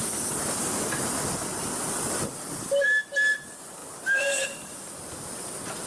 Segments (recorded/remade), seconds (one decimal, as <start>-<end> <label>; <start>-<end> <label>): 0.0-2.3 remade; 2.3-3.8 recorded; 3.8-5.3 remade; 5.3-5.9 recorded